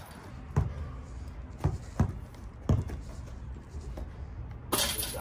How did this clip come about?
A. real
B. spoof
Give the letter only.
A